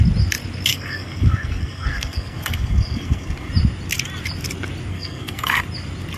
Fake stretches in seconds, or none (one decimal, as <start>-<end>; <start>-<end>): 0.7-3.5; 4.9-5.6